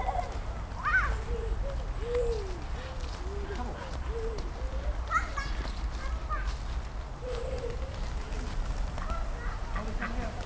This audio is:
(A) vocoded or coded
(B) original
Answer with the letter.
B